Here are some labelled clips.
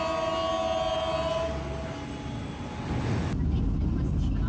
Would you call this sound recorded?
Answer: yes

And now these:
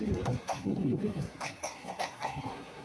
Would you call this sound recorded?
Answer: no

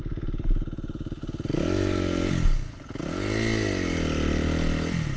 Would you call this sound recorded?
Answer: yes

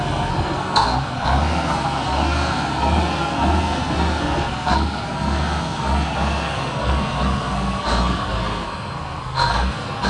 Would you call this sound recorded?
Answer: no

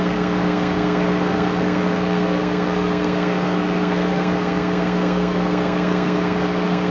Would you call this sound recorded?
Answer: no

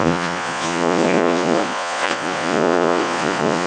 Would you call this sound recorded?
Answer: no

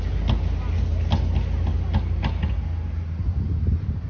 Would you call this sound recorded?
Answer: yes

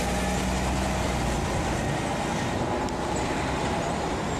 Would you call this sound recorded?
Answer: yes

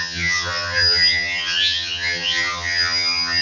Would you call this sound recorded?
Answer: no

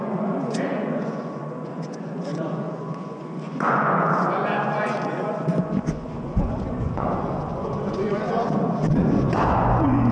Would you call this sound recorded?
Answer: no